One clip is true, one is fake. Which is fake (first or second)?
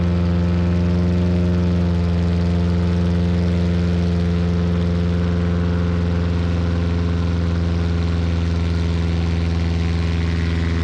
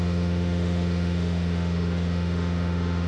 second